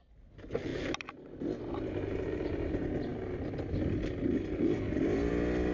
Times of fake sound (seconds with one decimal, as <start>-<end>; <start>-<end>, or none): none